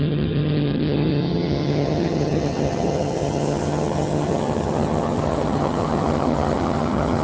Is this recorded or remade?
remade